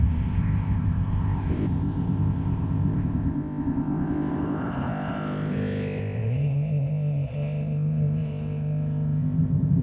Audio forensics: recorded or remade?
remade